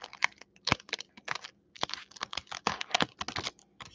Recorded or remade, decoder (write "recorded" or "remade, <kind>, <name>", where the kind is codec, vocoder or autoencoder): recorded